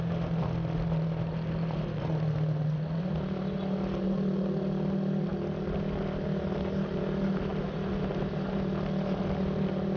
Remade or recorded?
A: recorded